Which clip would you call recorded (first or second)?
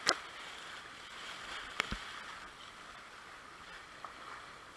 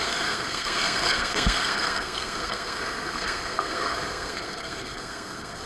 first